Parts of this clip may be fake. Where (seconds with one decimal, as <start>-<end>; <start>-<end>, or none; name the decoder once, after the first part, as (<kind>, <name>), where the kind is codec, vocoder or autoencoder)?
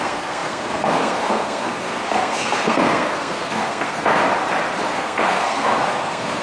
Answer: 0.0-4.2 (codec, SNAC); 4.9-6.4